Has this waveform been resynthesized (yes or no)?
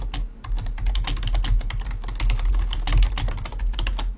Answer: no